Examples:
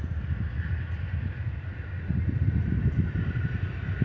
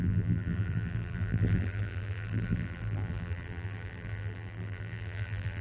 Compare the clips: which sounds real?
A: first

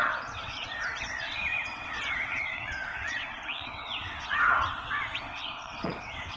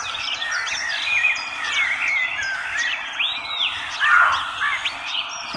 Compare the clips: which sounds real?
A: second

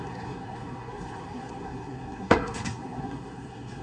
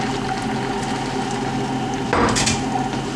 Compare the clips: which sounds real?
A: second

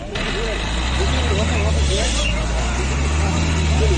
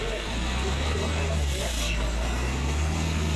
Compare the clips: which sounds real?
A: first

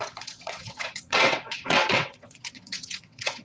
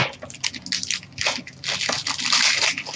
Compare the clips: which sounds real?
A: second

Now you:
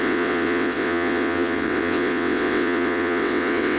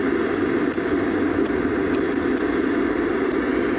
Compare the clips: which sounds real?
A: second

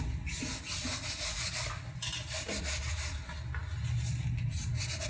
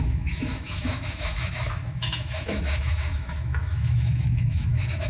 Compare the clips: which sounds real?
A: first